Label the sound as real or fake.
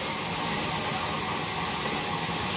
real